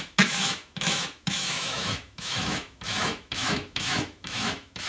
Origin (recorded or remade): remade